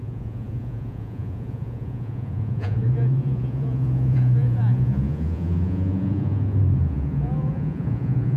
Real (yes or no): no